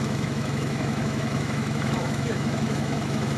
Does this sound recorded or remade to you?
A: remade